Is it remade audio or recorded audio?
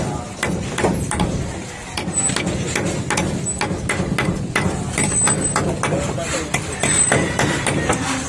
recorded